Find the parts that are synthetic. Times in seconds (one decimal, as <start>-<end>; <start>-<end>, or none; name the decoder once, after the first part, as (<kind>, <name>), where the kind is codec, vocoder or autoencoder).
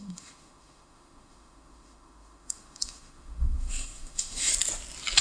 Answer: 0.0-4.5 (autoencoder, DAC-VAE)